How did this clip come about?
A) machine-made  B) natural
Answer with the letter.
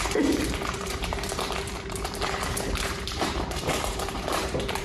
A